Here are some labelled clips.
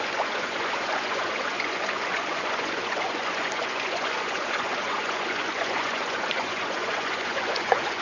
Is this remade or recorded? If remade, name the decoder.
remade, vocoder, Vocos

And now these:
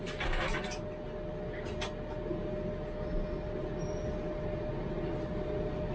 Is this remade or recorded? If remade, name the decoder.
recorded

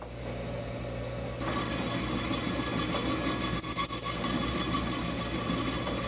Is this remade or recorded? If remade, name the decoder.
recorded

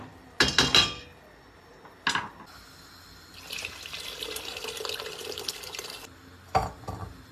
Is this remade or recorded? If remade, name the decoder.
recorded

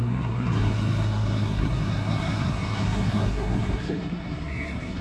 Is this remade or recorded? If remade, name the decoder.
remade, codec, SNAC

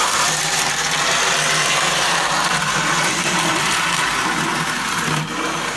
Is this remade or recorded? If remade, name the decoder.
remade, vocoder, BigVGAN v2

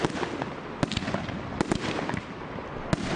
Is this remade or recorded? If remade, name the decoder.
recorded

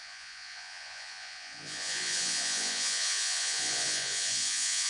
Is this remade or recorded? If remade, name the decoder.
remade, vocoder, Vocos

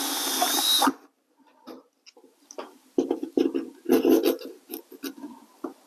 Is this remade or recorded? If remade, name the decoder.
recorded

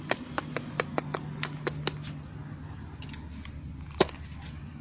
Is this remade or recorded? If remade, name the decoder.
recorded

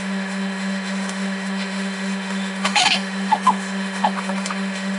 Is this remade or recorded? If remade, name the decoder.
remade, autoencoder, DAC-VAE